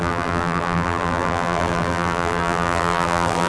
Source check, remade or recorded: remade